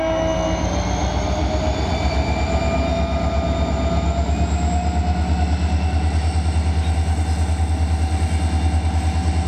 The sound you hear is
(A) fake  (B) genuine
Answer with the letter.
B